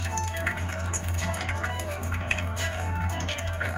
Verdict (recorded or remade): remade